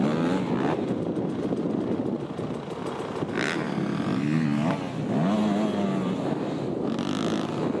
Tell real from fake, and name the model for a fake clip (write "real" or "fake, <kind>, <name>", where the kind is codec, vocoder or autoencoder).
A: real